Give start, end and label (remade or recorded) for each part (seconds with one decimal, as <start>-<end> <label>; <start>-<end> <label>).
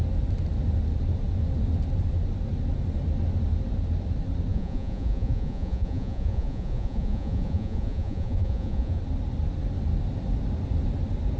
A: 0.0-4.5 recorded; 4.5-9.0 remade; 9.0-11.4 recorded